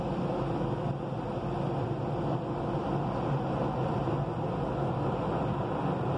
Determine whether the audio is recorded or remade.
recorded